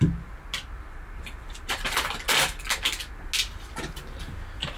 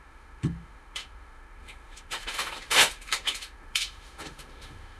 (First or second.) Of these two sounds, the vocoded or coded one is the second